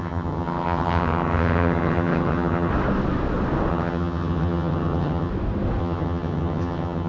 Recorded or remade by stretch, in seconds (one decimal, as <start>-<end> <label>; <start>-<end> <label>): 0.0-2.7 remade; 2.7-3.7 recorded; 3.7-5.3 remade; 5.3-5.8 recorded; 5.8-7.1 remade